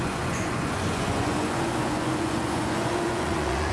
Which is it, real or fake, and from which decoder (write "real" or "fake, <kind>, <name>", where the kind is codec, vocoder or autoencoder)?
fake, vocoder, Vocos